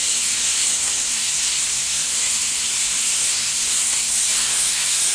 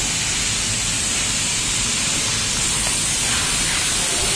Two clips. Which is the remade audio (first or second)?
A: first